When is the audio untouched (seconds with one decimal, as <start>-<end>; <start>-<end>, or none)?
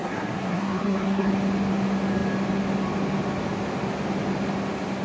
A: 1.3-5.0